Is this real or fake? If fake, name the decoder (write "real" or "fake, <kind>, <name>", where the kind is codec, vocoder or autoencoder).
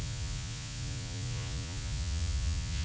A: fake, vocoder, Vocos